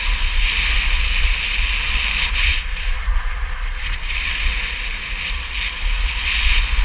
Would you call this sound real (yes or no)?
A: yes